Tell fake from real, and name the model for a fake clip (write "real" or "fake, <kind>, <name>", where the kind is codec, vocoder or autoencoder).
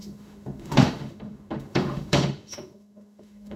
fake, autoencoder, DAC-VAE